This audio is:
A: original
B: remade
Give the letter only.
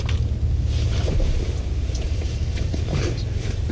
A